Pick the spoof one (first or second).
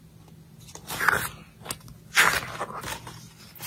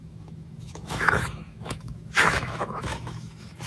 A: second